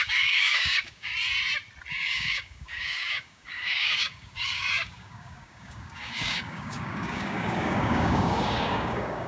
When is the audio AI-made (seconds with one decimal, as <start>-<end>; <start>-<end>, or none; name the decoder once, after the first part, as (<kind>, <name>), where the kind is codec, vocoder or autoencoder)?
0.0-1.1 (codec, DAC); 1.9-9.3